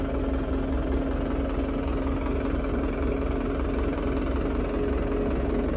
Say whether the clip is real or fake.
real